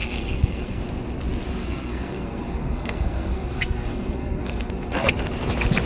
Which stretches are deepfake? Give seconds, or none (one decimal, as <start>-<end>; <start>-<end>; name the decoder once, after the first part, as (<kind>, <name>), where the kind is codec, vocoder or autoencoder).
0.0-0.8 (codec, SNAC); 1.6-5.1